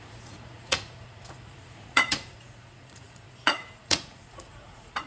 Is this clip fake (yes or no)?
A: yes